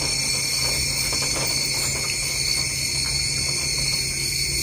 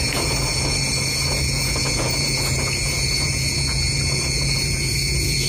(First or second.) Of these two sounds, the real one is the first